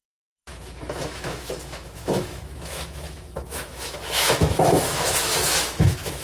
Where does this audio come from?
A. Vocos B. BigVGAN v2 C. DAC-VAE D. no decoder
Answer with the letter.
C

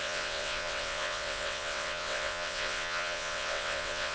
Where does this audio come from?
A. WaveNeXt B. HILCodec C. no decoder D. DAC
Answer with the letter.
A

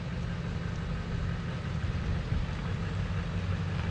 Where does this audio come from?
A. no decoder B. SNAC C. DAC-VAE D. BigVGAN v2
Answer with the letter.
A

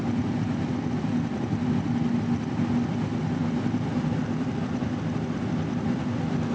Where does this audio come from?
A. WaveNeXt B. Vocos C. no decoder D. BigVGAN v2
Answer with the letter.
C